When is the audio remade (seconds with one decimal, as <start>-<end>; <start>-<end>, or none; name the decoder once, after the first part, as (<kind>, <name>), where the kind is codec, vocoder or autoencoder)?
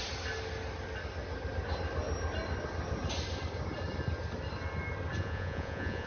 5.2-6.1 (vocoder, Vocos)